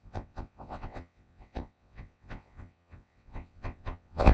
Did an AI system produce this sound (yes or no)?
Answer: yes